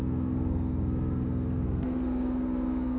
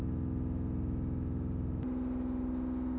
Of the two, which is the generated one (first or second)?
first